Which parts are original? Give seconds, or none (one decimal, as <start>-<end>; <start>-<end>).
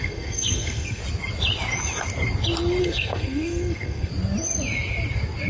1.0-2.8; 4.1-5.5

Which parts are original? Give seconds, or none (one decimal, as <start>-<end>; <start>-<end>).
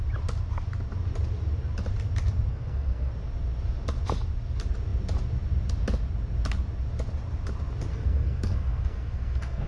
0.0-2.5; 3.1-7.9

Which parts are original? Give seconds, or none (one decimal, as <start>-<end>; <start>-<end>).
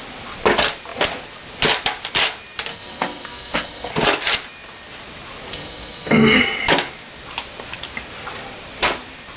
0.0-2.7; 3.9-5.5; 6.4-9.4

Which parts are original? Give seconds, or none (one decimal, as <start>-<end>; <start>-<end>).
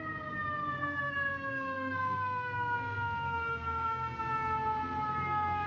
0.0-0.8; 4.2-5.1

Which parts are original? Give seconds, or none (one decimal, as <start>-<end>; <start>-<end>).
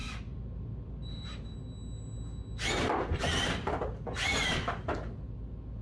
0.0-5.8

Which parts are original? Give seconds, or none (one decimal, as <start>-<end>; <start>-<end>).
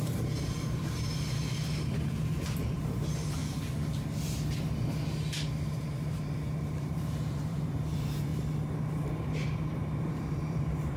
3.4-5.8; 8.3-8.9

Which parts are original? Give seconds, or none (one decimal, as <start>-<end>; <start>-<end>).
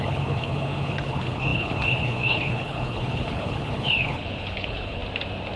5.0-5.6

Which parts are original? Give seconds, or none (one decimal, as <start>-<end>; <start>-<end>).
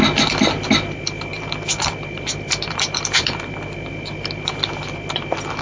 0.0-1.3; 4.7-5.6